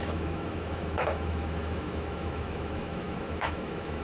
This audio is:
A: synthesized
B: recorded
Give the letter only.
A